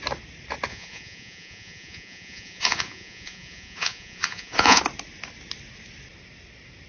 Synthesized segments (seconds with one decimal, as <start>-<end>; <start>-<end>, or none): 0.7-4.8